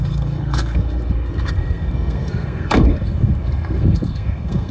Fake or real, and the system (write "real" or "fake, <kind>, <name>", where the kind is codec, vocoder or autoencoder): fake, codec, SNAC